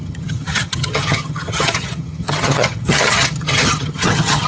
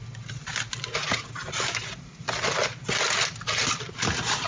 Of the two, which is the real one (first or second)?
second